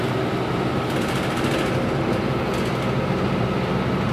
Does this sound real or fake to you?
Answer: real